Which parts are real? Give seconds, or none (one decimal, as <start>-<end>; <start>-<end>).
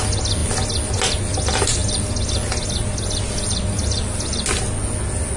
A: 0.0-5.4